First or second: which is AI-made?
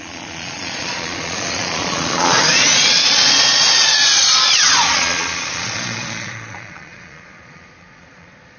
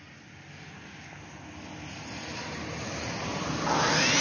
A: first